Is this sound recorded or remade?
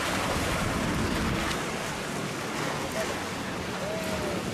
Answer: recorded